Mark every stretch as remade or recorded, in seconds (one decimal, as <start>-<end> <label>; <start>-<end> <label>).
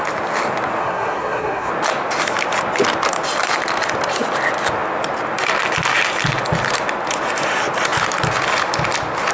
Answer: 0.0-0.8 recorded; 0.8-1.7 remade; 1.7-9.3 recorded